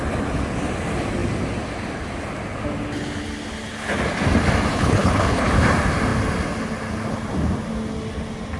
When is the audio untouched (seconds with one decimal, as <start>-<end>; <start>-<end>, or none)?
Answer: 0.0-4.7; 5.5-8.6